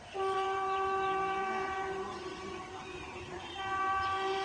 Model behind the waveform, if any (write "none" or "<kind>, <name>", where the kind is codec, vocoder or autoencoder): vocoder, BigVGAN v2